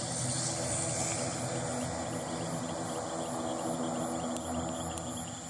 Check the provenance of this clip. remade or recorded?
recorded